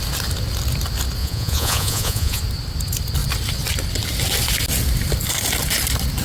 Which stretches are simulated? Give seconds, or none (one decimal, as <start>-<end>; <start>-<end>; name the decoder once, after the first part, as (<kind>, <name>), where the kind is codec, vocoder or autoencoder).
1.2-2.4 (vocoder, Vocos)